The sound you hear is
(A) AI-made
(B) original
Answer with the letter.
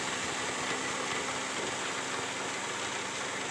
B